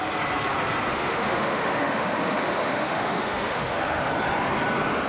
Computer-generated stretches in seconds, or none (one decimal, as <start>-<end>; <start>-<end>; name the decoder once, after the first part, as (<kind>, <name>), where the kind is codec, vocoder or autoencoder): 0.9-4.0 (autoencoder, DAC-VAE)